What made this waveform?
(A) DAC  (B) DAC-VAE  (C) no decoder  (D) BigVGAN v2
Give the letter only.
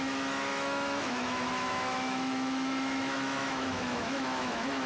B